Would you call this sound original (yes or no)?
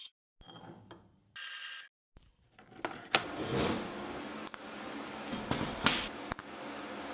yes